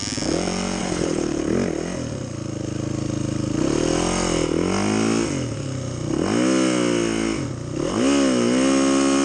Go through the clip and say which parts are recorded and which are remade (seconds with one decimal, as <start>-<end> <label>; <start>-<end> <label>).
0.0-0.8 recorded; 0.8-1.4 remade; 1.4-9.2 recorded